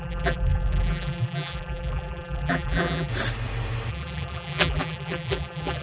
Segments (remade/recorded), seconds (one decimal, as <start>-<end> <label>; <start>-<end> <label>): 0.0-3.1 remade; 3.1-3.9 recorded; 3.9-5.8 remade